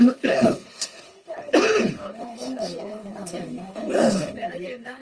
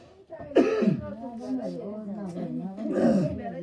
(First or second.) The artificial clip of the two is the first